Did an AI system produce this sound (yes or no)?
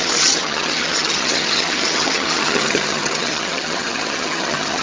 yes